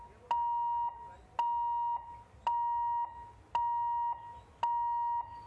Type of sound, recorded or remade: recorded